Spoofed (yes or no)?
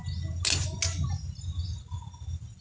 no